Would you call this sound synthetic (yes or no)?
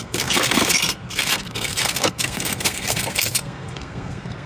yes